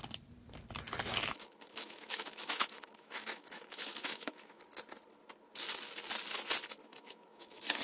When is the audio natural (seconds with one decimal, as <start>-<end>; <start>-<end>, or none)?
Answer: 0.0-1.1; 4.6-6.8